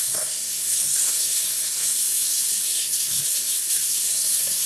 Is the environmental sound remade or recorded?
remade